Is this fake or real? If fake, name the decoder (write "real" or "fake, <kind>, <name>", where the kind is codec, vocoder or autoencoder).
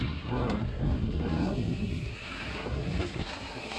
fake, codec, SNAC